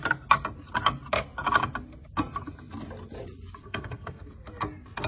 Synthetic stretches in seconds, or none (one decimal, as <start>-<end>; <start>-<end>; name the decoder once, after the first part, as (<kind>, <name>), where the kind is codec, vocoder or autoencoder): 3.6-4.3 (codec, SNAC)